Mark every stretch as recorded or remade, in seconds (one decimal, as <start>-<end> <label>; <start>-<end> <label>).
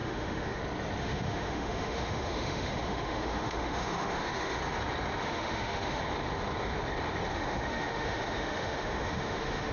0.0-0.6 remade; 0.6-1.0 recorded; 1.0-4.6 remade; 4.6-5.2 recorded; 5.2-6.0 remade; 6.0-7.3 recorded; 7.3-9.7 remade